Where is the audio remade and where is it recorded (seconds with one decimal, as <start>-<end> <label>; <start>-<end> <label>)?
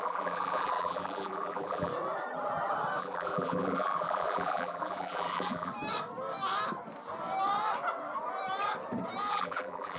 0.0-1.9 remade; 1.9-3.0 recorded; 3.0-5.7 remade; 5.7-9.3 recorded; 9.3-10.0 remade